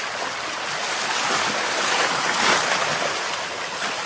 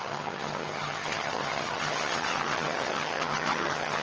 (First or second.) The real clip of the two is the first